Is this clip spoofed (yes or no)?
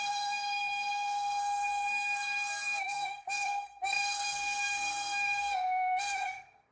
yes